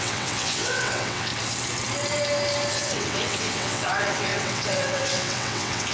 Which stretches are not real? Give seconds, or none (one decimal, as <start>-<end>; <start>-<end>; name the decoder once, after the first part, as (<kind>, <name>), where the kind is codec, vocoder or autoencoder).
0.0-1.3 (vocoder, WaveNeXt); 2.7-5.9